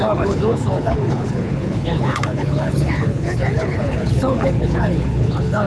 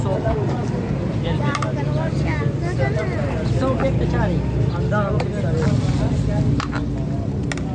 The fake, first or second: first